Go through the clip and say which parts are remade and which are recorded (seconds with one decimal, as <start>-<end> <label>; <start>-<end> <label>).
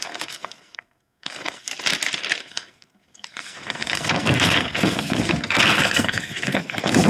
0.0-1.7 remade; 1.7-2.4 recorded; 2.4-7.1 remade